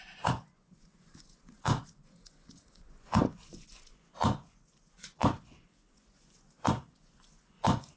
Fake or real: fake